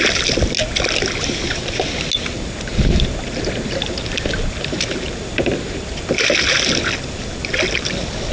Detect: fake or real real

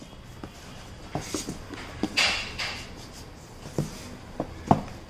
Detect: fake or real real